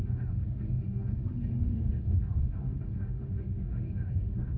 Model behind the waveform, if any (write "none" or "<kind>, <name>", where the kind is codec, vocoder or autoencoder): autoencoder, DAC-VAE